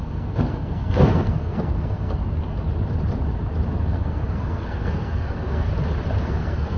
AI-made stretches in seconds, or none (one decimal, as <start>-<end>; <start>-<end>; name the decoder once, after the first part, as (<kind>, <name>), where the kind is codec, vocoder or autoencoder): 0.0-2.2 (codec, SNAC); 3.8-5.7; 6.2-6.8